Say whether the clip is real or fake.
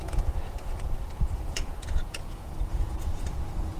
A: fake